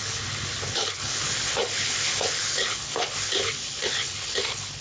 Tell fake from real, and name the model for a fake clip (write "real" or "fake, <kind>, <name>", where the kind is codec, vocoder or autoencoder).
fake, codec, HILCodec